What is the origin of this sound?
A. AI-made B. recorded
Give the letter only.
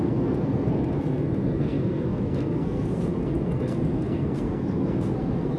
A